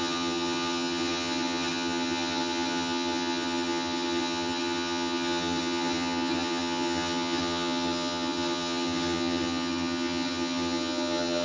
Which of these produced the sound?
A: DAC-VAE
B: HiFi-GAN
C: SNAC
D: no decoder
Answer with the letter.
B